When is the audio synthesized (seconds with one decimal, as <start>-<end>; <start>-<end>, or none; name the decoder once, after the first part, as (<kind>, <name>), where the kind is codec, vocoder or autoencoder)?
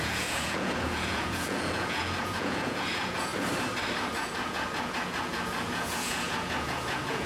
0.0-3.3 (vocoder, Vocos); 4.1-7.3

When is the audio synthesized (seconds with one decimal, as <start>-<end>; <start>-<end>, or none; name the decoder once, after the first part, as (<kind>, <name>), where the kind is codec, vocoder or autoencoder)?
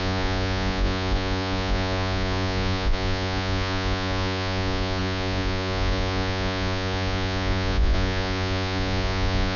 0.0-9.6 (vocoder, Vocos)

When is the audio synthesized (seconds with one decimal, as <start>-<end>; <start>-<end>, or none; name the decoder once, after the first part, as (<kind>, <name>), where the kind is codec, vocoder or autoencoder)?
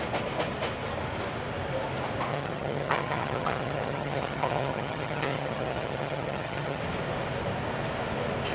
2.3-6.8 (vocoder, HiFi-GAN)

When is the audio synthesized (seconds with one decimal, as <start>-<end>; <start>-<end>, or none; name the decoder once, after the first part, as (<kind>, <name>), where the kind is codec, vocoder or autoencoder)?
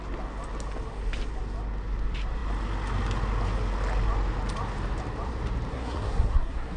5.7-6.8 (codec, SNAC)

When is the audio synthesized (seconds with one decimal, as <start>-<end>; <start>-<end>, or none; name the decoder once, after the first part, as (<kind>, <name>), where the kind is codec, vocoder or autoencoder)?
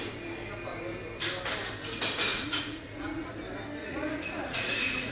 2.3-3.3 (vocoder, Vocos); 3.8-5.1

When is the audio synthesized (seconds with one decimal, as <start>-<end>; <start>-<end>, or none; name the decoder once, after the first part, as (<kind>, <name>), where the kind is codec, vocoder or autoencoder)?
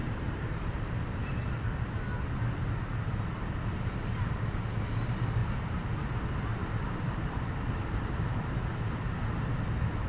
0.0-1.3 (vocoder, BigVGAN v2); 5.4-6.0; 6.5-8.8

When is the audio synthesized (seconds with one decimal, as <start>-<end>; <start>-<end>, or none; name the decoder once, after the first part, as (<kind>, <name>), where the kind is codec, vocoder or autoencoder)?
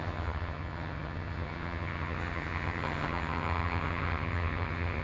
0.0-5.0 (vocoder, HiFi-GAN)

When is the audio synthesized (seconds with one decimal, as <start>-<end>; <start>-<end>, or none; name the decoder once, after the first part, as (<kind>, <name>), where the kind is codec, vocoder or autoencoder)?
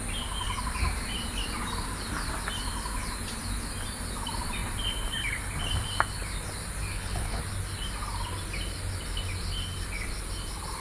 6.9-7.4 (codec, HILCodec)